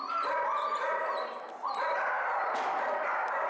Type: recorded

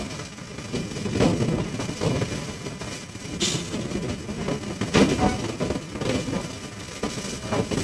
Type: recorded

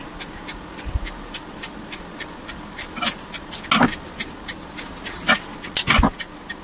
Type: recorded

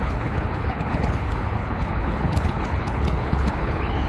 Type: remade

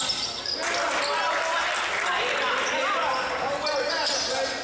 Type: recorded